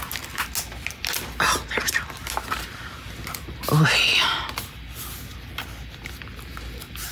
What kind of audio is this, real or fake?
real